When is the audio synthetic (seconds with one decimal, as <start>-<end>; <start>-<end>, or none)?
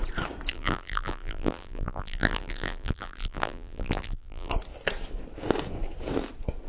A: 0.5-4.5